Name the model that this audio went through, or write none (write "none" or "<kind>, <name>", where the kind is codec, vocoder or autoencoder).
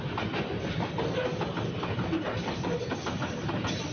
none